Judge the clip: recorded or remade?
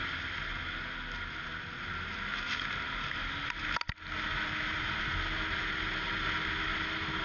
recorded